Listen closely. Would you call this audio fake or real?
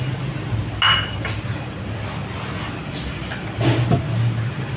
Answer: real